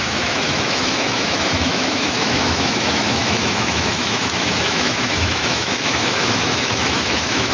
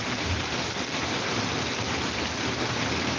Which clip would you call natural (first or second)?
second